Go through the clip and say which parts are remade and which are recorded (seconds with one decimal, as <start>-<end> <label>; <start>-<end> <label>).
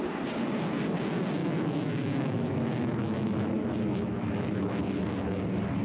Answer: 0.0-1.4 recorded; 1.4-4.8 remade; 4.8-5.8 recorded